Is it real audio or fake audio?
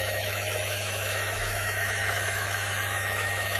fake